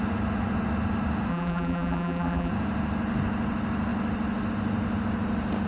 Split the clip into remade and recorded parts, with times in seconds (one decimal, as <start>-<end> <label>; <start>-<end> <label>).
0.0-1.3 recorded; 1.3-2.5 remade; 2.5-5.7 recorded